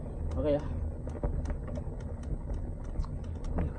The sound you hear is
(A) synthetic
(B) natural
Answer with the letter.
B